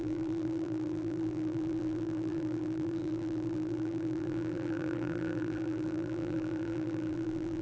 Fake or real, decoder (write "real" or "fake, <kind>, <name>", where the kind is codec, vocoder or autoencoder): fake, vocoder, BigVGAN v2